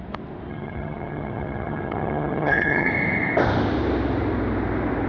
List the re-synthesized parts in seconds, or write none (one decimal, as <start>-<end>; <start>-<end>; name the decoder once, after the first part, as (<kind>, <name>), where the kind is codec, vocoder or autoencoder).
0.5-2.9 (vocoder, HiFi-GAN)